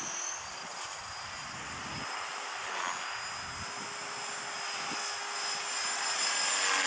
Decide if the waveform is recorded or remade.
recorded